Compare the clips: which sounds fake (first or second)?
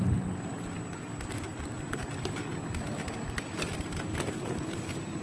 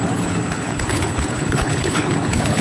second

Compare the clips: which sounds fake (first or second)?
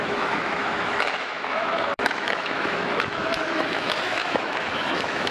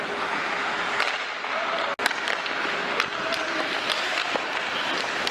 first